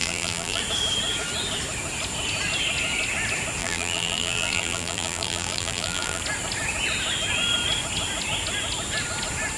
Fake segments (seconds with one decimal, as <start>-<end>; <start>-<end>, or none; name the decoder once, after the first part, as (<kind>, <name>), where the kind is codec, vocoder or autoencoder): 0.0-0.6 (vocoder, BigVGAN v2); 3.6-6.2